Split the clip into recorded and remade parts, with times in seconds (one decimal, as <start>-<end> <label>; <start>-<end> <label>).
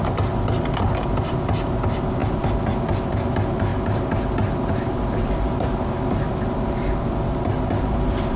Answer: 0.0-8.4 recorded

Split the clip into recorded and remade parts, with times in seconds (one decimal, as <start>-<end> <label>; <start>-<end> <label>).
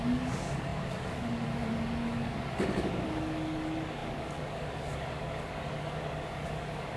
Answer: 0.0-7.0 remade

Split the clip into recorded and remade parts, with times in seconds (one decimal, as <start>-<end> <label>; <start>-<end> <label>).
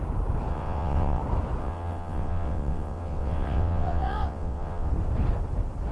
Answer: 0.0-0.5 recorded; 0.5-1.2 remade; 1.2-1.6 recorded; 1.6-4.9 remade; 4.9-5.9 recorded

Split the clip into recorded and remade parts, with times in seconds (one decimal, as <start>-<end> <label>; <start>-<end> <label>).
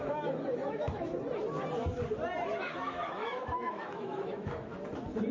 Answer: 0.0-1.1 remade; 1.1-2.6 recorded; 2.6-4.7 remade; 4.7-5.3 recorded